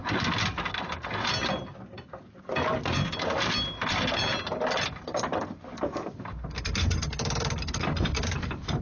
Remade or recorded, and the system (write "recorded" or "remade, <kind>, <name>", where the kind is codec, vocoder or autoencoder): recorded